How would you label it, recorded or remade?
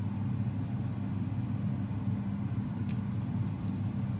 recorded